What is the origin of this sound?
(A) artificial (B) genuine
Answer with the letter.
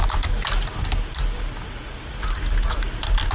B